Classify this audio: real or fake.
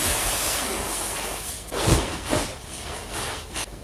fake